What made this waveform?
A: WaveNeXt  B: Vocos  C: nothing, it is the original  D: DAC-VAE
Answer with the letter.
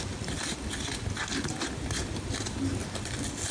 C